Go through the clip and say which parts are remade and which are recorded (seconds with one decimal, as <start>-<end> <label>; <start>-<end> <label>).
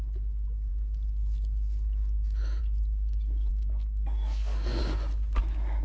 0.0-3.5 recorded; 3.5-4.8 remade; 4.8-5.8 recorded